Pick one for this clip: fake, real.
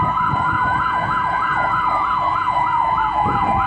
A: fake